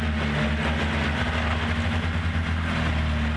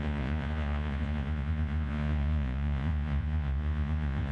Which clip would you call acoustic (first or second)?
first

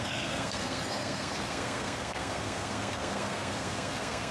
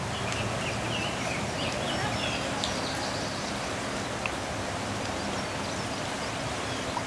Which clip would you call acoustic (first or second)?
second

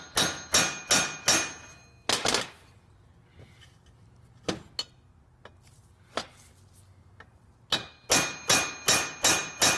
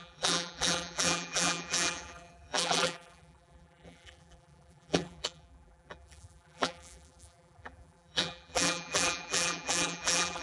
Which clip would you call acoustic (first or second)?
first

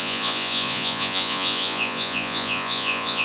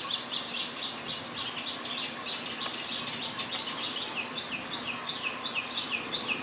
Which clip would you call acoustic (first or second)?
second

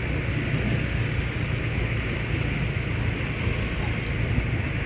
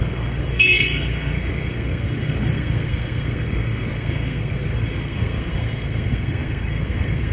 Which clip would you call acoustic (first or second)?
first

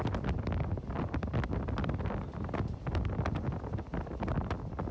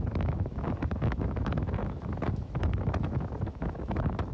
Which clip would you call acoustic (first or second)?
first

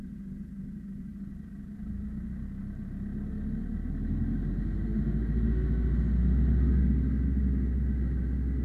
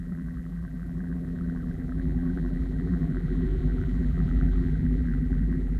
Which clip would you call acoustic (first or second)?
first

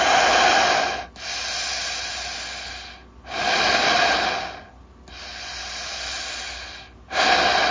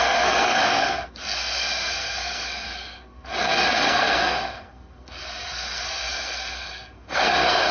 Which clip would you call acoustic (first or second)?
first